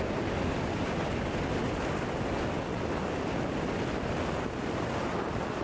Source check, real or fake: real